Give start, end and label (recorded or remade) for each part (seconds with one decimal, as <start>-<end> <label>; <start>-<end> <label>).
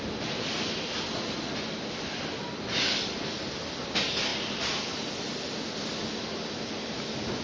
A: 0.0-7.4 recorded